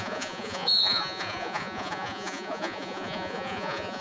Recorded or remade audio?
remade